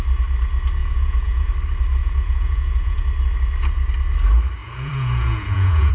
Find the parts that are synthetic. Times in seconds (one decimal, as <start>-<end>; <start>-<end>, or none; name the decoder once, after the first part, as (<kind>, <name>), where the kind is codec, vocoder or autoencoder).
0.8-1.5 (vocoder, Vocos); 2.0-3.0; 4.6-5.9